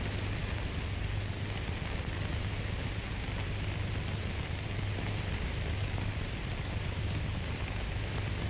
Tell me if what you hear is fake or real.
real